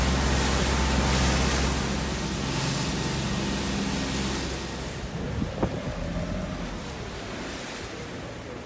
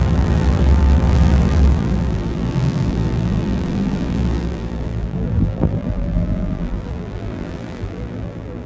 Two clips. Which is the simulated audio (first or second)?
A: second